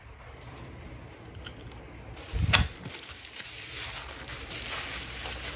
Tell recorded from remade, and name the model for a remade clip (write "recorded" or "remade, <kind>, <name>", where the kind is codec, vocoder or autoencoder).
recorded